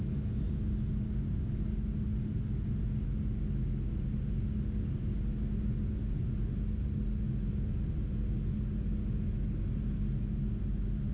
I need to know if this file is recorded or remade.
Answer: recorded